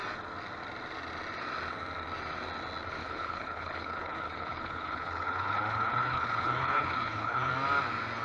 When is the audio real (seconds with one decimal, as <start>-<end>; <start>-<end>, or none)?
0.0-3.0; 7.5-8.2